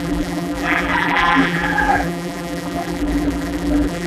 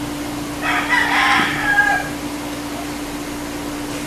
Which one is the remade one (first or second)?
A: first